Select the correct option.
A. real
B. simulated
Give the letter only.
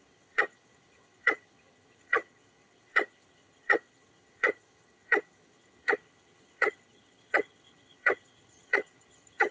B